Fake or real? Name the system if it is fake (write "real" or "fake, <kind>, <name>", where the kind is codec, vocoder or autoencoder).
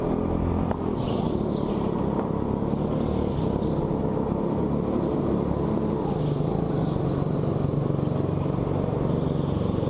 real